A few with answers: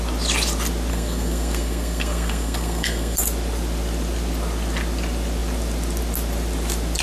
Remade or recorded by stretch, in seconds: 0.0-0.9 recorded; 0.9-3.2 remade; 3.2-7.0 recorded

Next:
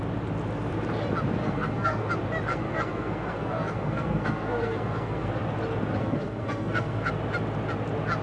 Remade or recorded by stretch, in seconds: 0.0-1.4 recorded; 1.4-2.1 remade; 2.1-2.5 recorded; 2.5-5.3 remade; 5.3-6.0 recorded; 6.0-7.1 remade; 7.1-8.2 recorded

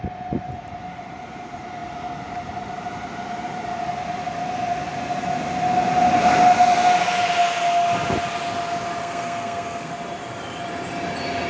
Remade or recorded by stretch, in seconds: 0.0-9.0 recorded; 9.0-9.9 remade; 9.9-11.5 recorded

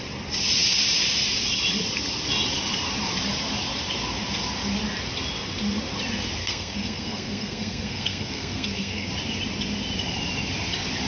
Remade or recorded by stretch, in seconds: 0.0-6.4 recorded; 6.4-9.1 remade; 9.1-11.1 recorded

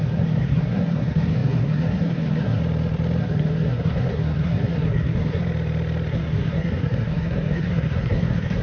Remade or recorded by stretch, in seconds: 0.0-2.6 remade; 2.6-3.2 recorded; 3.2-5.4 remade; 5.4-6.1 recorded; 6.1-8.6 remade

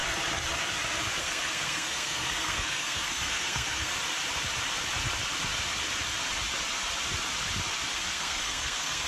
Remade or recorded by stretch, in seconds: 0.0-1.2 recorded; 1.2-3.9 remade; 3.9-7.9 recorded; 7.9-9.1 remade

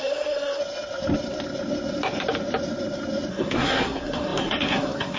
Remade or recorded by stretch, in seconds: 0.0-0.6 remade; 0.6-3.3 recorded; 3.3-5.2 remade

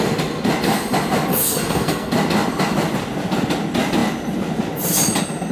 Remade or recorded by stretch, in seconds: 0.0-1.3 recorded; 1.3-2.1 remade; 2.1-5.5 recorded